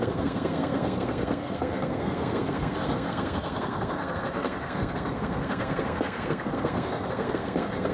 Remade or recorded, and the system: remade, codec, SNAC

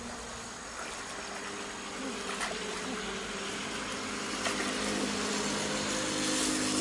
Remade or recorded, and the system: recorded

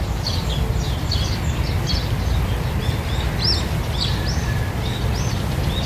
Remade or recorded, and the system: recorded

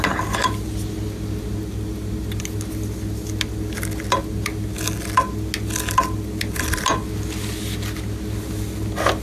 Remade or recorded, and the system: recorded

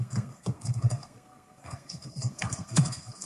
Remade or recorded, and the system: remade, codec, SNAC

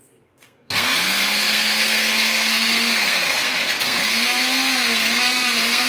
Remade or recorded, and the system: remade, codec, SNAC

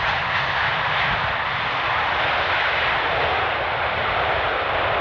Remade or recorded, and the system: recorded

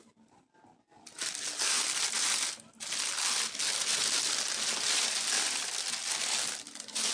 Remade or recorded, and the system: recorded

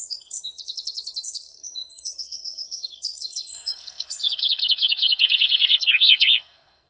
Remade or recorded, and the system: remade, codec, SNAC